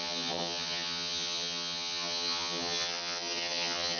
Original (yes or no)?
no